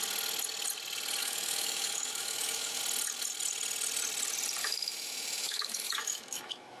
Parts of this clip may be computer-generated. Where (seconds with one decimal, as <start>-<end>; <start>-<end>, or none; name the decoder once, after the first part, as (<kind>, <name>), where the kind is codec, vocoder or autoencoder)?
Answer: 1.2-2.8 (autoencoder, DAC-VAE); 4.6-6.8